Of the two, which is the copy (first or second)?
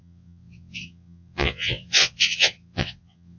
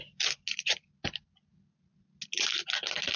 first